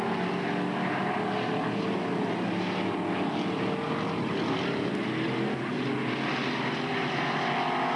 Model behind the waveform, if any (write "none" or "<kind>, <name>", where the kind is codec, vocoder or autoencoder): none